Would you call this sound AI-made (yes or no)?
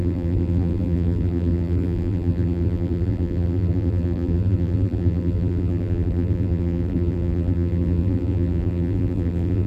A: yes